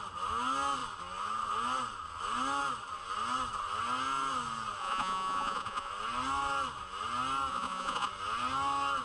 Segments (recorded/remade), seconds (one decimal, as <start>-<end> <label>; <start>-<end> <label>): 0.0-4.8 recorded; 4.8-5.9 remade; 5.9-7.5 recorded; 7.5-8.1 remade; 8.1-9.0 recorded